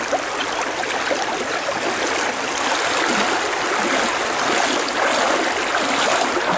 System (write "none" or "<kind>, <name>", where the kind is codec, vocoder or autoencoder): none